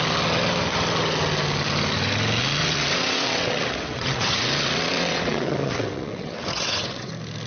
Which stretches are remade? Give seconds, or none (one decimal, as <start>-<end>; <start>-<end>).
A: 2.6-7.1